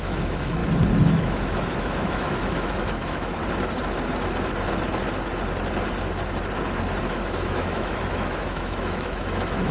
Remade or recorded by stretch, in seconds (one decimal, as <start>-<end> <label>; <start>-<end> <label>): 0.0-0.6 remade; 0.6-1.1 recorded; 1.1-3.4 remade; 3.4-7.0 recorded; 7.0-9.7 remade